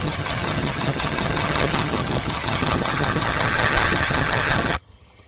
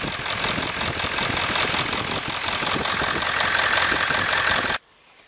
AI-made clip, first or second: first